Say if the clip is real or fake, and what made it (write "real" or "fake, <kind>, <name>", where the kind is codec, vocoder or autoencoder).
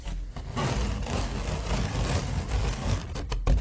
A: real